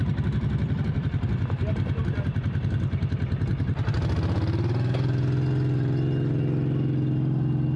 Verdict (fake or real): real